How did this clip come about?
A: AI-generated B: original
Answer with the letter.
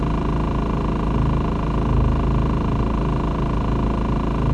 B